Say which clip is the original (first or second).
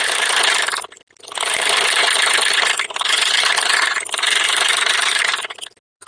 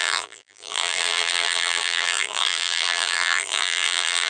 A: first